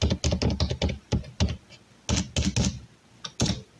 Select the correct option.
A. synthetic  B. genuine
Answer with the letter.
B